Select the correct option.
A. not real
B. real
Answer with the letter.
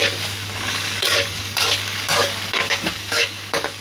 A